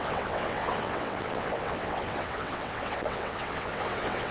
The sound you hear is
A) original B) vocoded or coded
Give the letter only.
B